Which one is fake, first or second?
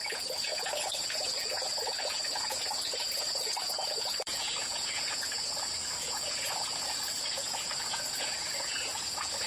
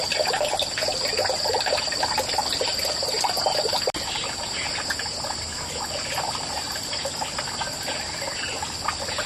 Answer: first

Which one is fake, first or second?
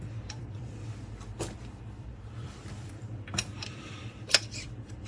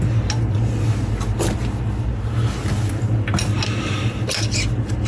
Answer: first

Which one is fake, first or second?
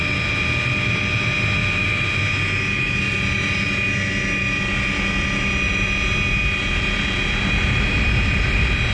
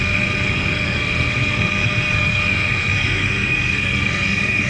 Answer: second